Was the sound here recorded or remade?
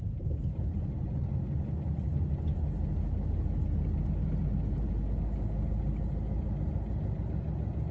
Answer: recorded